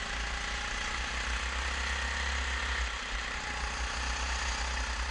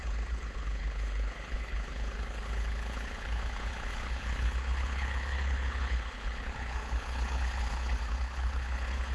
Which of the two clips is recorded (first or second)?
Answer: first